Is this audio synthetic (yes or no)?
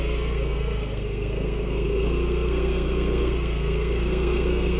yes